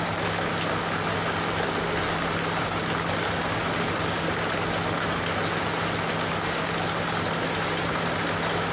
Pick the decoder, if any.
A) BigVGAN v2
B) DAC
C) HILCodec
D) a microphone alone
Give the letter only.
D